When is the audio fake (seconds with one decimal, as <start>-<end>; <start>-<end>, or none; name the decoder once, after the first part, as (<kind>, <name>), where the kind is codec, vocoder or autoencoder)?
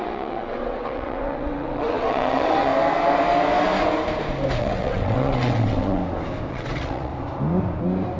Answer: 0.0-2.7 (vocoder, WaveNeXt); 4.6-6.0; 6.5-7.1